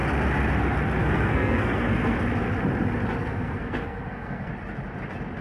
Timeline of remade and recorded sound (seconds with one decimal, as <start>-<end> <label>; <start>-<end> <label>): 0.0-1.0 recorded; 1.0-2.2 remade; 2.2-3.2 recorded; 3.2-4.5 remade; 4.5-5.4 recorded